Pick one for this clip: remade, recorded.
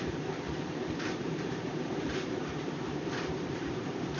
remade